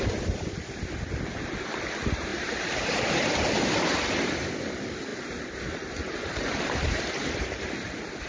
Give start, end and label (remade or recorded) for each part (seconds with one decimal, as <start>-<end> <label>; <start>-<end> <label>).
0.0-2.3 recorded; 2.3-4.5 remade; 4.5-5.1 recorded; 5.1-6.9 remade; 6.9-8.3 recorded